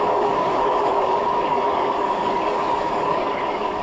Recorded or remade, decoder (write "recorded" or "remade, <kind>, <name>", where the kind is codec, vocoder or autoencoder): remade, codec, DAC